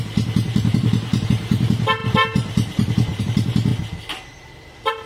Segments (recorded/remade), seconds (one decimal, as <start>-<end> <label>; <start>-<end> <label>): 0.0-3.7 remade; 3.7-5.1 recorded